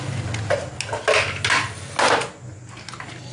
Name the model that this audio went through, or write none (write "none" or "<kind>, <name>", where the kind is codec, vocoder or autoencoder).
none